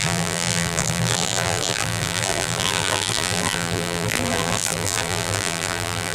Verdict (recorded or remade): remade